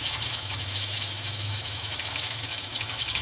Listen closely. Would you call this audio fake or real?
fake